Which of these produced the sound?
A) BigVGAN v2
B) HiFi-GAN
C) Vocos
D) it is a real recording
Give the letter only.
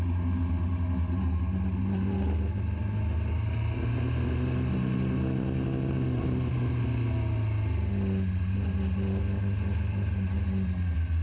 D